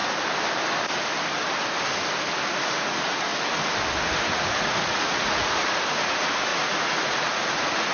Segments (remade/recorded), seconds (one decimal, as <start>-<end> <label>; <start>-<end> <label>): 0.0-2.5 recorded; 2.5-3.3 remade; 3.3-4.2 recorded; 4.2-7.9 remade